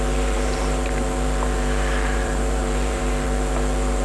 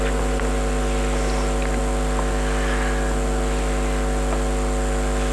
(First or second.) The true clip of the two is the second